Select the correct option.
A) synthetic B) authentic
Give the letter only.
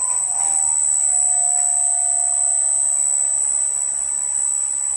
B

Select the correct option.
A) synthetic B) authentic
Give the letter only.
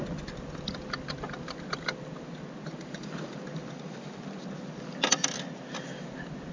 B